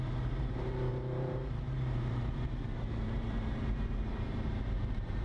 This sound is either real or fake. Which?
fake